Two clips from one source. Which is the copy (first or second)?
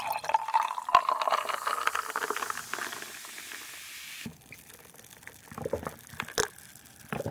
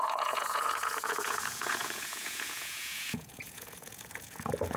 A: second